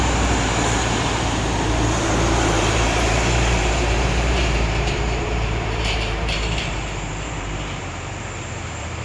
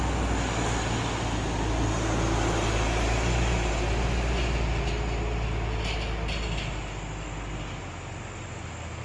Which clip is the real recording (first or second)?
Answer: second